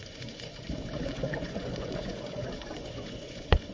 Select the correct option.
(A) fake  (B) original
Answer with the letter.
A